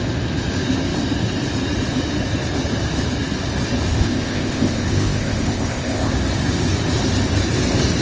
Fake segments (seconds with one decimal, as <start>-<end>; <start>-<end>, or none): 3.9-6.1